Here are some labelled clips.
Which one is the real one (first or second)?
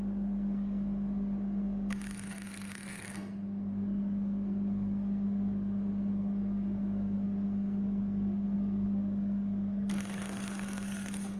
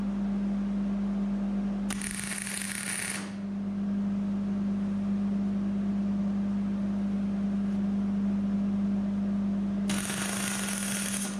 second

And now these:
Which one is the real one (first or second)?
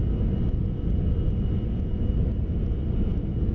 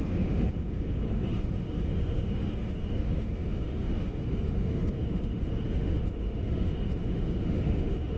first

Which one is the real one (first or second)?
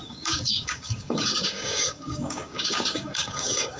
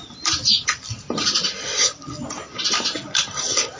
second